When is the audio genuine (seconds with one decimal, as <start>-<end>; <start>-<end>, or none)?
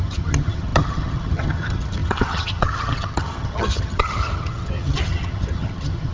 none